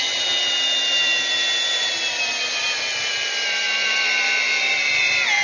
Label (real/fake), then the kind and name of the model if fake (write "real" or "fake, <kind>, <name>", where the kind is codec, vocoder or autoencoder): real